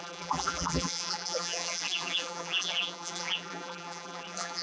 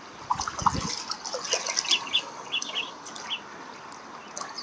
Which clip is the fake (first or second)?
first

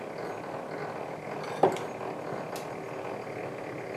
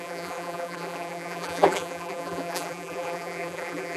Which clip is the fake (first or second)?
second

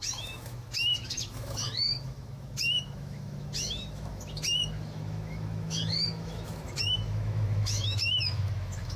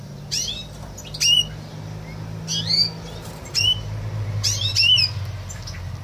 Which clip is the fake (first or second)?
first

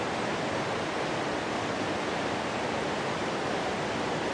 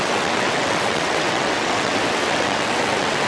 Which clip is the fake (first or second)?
second